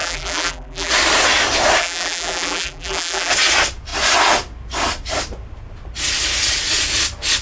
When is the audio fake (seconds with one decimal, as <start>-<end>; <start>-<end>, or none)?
0.0-0.9; 1.8-3.3